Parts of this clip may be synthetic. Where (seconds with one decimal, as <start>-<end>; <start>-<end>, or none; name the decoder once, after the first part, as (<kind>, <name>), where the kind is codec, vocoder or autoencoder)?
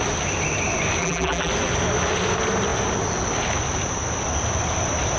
1.0-1.5 (vocoder, BigVGAN v2)